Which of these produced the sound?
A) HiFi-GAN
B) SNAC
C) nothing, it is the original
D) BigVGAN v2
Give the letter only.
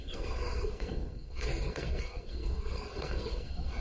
B